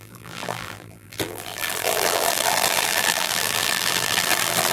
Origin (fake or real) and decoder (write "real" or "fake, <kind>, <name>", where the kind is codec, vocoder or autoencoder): fake, vocoder, BigVGAN v2